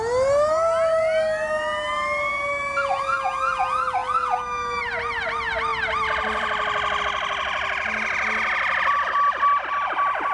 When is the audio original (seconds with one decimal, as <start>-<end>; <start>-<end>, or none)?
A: 0.0-10.3